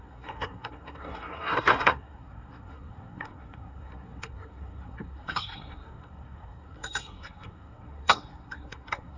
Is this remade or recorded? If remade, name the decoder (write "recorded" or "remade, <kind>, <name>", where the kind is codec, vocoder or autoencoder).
remade, codec, SNAC